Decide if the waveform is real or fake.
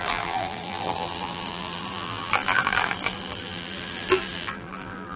fake